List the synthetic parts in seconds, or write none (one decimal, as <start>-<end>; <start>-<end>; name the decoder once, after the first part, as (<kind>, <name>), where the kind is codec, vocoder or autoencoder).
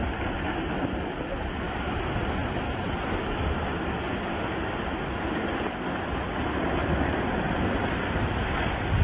none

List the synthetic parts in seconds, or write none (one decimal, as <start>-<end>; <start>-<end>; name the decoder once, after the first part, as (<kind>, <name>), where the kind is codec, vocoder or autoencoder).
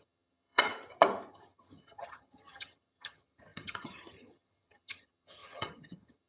0.0-0.7 (vocoder, HiFi-GAN); 1.3-6.3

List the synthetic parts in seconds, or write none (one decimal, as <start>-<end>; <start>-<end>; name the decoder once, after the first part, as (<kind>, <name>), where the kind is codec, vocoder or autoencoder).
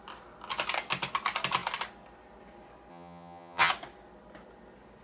2.9-3.7 (vocoder, HiFi-GAN)